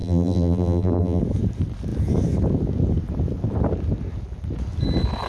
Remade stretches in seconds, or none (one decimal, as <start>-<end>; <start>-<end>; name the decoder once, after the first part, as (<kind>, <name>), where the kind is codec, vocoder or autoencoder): 0.0-1.2 (vocoder, BigVGAN v2)